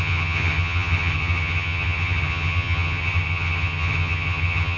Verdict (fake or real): fake